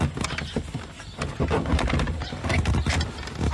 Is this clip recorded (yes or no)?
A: yes